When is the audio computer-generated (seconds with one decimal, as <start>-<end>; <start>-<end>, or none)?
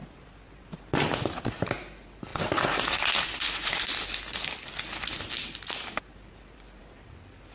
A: none